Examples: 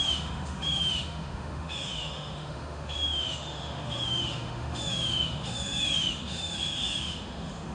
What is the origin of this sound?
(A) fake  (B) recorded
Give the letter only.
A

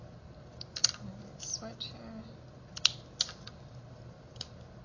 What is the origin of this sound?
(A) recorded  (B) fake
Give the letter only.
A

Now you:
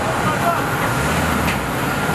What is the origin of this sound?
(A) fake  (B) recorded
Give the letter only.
B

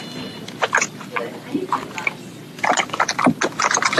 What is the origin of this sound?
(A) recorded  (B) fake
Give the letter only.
A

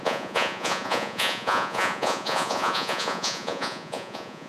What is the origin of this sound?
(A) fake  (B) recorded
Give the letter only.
A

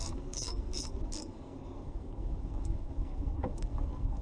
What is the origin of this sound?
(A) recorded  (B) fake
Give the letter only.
B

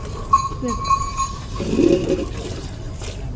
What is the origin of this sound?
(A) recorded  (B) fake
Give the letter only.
A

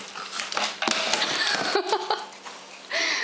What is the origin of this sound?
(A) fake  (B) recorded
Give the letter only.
B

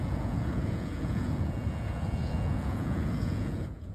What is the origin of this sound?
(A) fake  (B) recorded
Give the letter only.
A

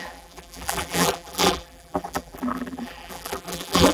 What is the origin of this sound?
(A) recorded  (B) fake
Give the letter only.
B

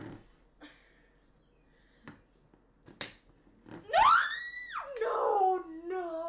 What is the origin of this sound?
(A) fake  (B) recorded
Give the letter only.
B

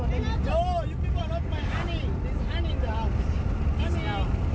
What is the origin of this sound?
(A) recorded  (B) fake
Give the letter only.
A